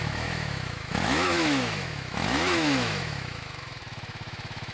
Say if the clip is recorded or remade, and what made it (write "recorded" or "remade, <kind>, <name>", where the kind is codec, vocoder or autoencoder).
remade, autoencoder, DAC-VAE